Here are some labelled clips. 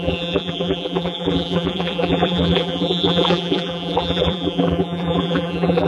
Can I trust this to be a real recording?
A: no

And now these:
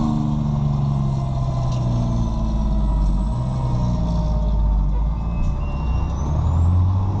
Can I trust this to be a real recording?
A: yes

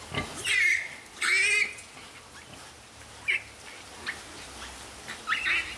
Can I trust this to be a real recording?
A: yes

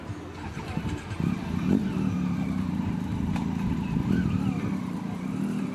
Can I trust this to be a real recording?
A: yes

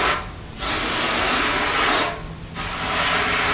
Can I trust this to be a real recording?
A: yes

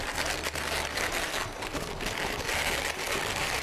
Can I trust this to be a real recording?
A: yes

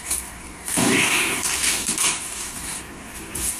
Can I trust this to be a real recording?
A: no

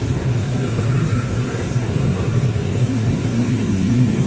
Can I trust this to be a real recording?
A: no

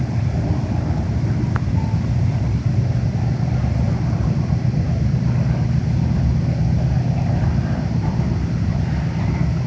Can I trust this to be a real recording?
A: yes